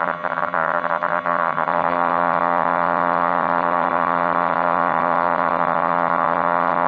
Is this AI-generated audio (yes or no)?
yes